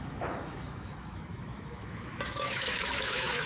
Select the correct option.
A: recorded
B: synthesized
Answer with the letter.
B